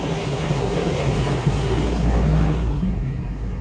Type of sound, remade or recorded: remade